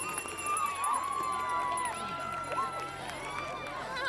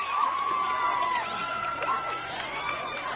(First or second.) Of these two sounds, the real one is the first